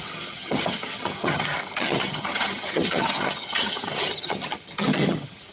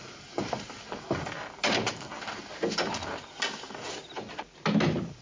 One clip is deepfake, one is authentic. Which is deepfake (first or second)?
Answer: first